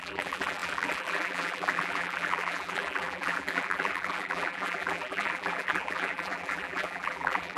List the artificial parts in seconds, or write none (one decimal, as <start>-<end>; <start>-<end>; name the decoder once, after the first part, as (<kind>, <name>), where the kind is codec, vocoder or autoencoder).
0.0-7.6 (vocoder, BigVGAN v2)